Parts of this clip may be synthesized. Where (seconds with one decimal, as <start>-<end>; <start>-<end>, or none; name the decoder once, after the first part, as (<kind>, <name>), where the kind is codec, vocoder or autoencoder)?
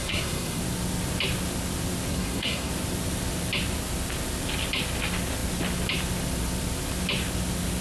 0.0-0.6 (codec, SNAC); 2.1-2.7